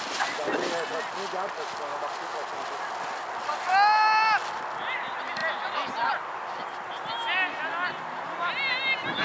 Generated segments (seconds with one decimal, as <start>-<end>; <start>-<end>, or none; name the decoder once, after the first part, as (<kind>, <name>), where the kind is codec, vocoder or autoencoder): none